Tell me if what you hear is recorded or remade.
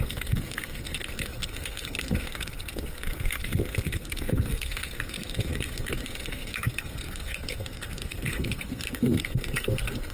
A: remade